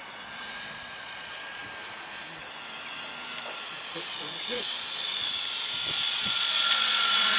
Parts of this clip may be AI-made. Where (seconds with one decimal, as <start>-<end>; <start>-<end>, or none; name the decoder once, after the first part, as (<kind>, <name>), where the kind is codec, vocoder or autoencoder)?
0.0-1.6 (vocoder, Vocos); 3.4-5.3; 5.9-7.4